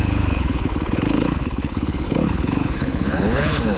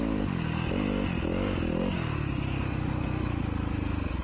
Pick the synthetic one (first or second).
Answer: first